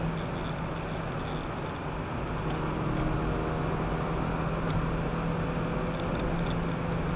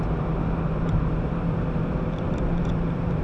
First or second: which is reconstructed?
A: second